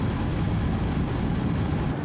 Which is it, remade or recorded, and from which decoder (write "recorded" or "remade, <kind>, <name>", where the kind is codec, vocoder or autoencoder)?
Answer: recorded